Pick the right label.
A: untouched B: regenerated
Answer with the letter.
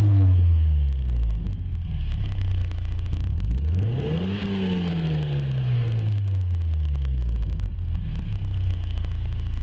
B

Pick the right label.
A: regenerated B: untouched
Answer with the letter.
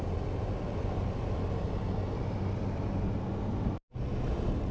B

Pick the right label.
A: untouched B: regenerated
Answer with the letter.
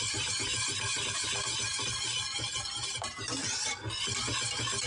A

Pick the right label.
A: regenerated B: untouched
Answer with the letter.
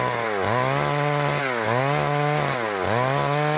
B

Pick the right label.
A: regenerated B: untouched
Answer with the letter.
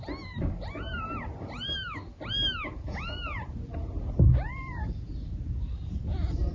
A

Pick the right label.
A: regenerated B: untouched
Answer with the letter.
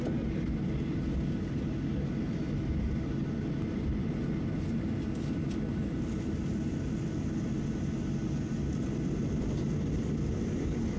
B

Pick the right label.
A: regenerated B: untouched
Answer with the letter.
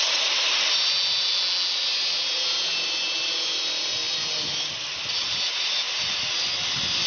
B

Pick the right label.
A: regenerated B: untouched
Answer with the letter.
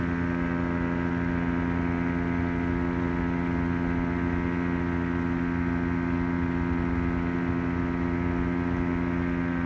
B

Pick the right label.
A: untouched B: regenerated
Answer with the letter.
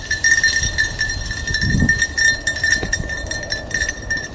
A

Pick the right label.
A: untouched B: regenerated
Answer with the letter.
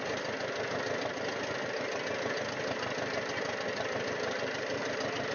A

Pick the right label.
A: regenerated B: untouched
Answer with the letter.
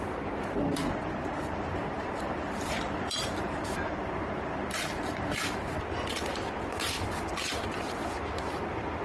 A